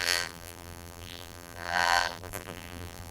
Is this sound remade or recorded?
remade